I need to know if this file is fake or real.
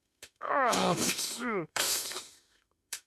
fake